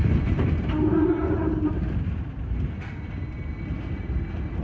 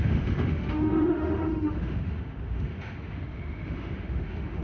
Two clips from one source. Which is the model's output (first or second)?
second